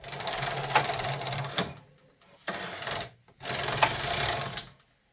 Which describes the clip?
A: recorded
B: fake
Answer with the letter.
A